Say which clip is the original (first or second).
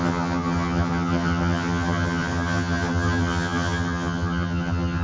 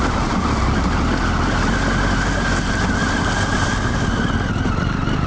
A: second